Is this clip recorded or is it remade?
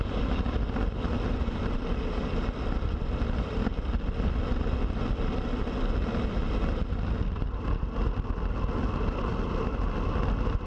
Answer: recorded